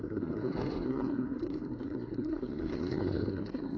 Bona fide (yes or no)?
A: no